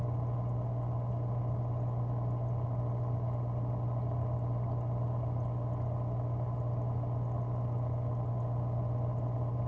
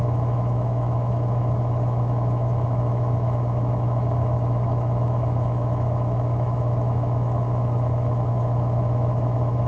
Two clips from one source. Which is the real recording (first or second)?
first